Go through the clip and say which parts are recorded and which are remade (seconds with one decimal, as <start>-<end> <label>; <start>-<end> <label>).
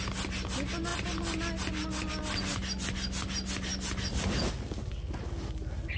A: 0.0-6.0 recorded